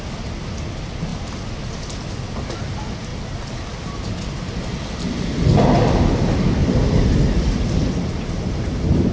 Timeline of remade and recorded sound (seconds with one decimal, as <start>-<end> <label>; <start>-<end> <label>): 0.0-3.1 recorded; 3.1-4.2 remade; 4.2-6.6 recorded; 6.6-7.5 remade; 7.5-9.1 recorded